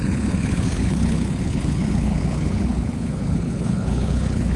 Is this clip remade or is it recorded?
remade